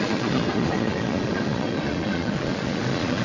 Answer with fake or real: fake